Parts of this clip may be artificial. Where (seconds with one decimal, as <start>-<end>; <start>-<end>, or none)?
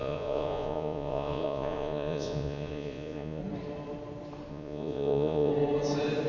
0.0-3.4; 4.5-5.5